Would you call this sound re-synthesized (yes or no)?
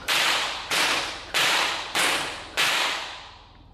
no